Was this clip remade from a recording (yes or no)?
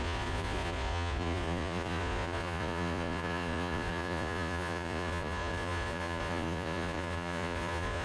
yes